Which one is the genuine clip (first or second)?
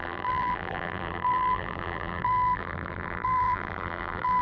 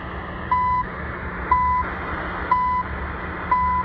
second